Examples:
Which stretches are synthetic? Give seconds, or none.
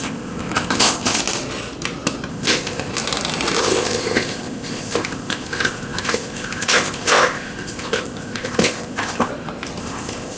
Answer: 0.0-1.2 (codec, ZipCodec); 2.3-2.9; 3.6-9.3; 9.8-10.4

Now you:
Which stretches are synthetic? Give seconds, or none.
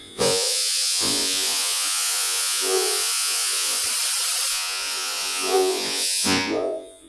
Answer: 0.0-3.8 (vocoder, Vocos); 4.5-7.1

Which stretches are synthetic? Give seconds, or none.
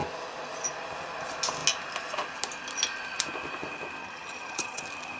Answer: 4.0-4.8 (vocoder, HiFi-GAN)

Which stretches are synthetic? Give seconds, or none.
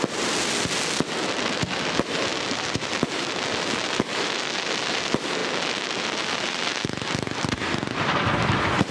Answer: none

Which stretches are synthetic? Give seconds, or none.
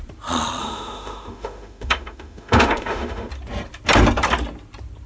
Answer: 0.6-3.3 (autoencoder, DAC-VAE)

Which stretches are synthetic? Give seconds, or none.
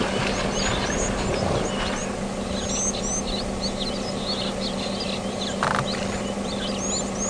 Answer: none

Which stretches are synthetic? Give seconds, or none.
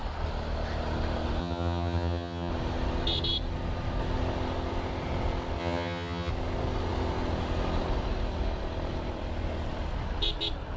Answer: 1.4-2.5 (vocoder, HiFi-GAN); 5.6-6.3